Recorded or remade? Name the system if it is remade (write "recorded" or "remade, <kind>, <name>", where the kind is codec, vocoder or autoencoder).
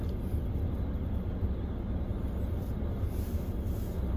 recorded